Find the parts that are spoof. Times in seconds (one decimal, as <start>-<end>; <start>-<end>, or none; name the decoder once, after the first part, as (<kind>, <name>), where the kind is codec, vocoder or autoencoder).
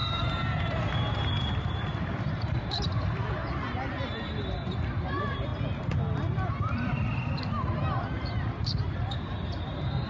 0.0-3.4 (vocoder, BigVGAN v2); 4.3-5.5; 6.5-10.1